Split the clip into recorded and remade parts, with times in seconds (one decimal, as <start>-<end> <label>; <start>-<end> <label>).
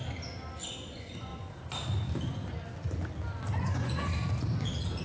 0.0-0.9 recorded; 0.9-1.3 remade; 1.3-3.6 recorded; 3.6-4.1 remade; 4.1-5.0 recorded